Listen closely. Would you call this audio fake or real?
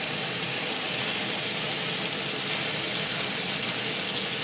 real